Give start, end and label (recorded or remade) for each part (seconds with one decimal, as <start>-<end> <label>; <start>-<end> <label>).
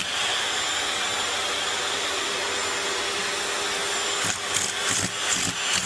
0.0-5.9 recorded